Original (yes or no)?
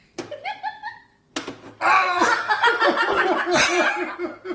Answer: yes